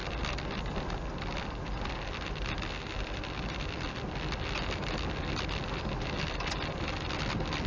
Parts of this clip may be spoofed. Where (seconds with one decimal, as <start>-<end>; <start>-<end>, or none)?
none